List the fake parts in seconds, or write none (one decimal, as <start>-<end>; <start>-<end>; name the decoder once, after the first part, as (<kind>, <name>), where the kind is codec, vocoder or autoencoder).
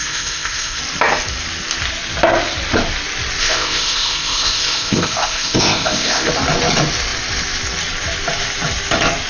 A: 0.0-0.8 (codec, ZipCodec); 3.4-6.3